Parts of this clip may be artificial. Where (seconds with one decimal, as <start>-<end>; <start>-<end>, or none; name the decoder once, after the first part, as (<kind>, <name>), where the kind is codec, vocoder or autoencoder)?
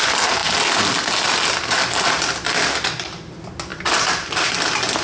3.7-4.5 (vocoder, BigVGAN v2)